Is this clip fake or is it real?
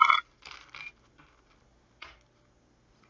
real